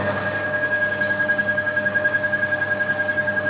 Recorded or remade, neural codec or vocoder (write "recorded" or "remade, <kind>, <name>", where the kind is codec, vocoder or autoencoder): remade, codec, DAC